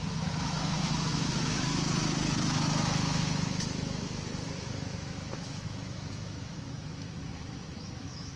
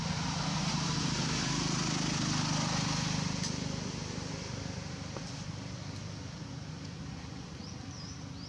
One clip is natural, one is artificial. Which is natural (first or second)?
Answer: second